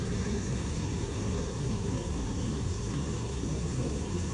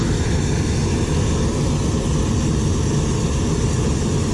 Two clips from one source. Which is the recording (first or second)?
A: second